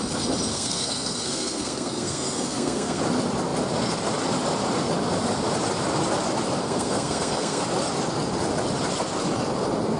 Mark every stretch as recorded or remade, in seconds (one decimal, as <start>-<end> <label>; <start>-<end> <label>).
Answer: 0.0-0.5 recorded; 0.5-3.0 remade; 3.0-6.6 recorded; 6.6-7.6 remade; 7.6-10.0 recorded